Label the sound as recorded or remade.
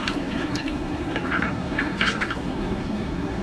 remade